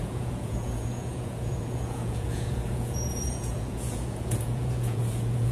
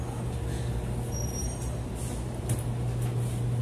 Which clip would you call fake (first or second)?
first